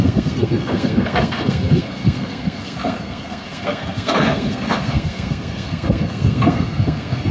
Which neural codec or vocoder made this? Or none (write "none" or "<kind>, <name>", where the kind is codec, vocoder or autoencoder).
codec, SNAC